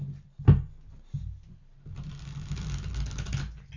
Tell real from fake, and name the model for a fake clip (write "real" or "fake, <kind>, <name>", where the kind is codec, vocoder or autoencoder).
real